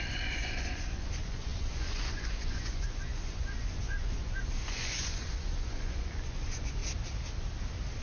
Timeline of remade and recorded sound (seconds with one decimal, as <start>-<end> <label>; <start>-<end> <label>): 0.0-6.8 remade; 6.8-8.0 recorded